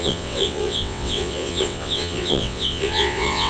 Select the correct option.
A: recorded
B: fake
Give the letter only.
B